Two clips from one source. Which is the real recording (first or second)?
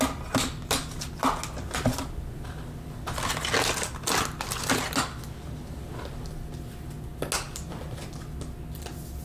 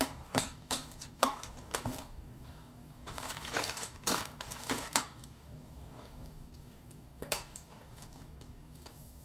first